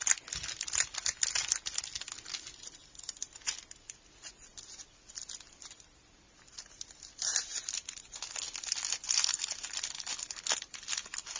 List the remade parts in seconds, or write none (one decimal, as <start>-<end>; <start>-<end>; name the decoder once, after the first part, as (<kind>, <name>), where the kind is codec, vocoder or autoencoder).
none